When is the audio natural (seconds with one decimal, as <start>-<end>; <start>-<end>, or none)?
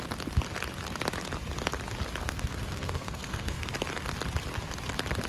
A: 0.0-2.2; 3.7-5.3